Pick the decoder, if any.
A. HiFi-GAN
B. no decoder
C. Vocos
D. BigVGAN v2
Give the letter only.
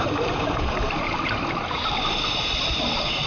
D